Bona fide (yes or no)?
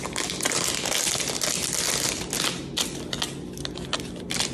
yes